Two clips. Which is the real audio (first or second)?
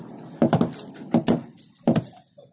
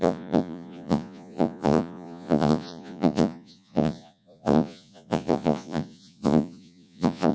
first